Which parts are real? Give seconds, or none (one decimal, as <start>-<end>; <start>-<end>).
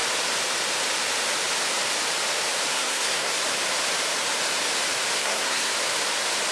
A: 0.0-2.7; 3.3-5.2; 5.7-6.5